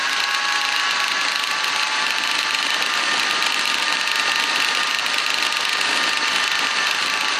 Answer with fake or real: fake